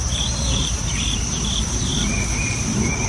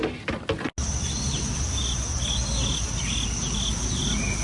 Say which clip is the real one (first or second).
second